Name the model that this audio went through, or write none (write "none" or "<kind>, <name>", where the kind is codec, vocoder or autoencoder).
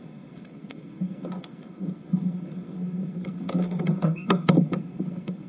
codec, SNAC